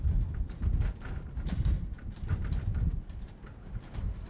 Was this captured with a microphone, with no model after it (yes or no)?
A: yes